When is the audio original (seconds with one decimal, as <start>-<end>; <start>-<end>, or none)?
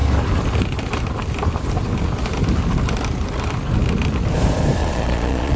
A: 0.0-4.8